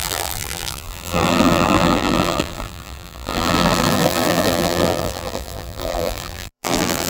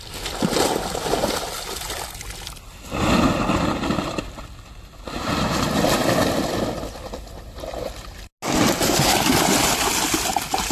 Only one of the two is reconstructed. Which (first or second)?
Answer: first